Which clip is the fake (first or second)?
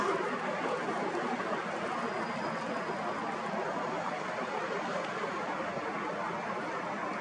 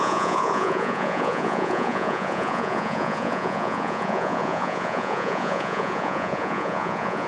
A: second